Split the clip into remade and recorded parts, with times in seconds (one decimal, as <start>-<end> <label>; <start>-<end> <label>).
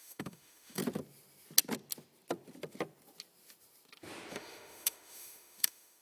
0.0-0.8 remade; 0.8-4.3 recorded; 4.3-6.0 remade